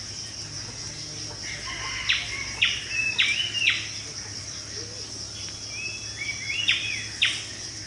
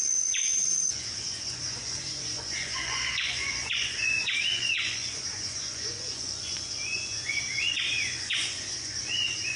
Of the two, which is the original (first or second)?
first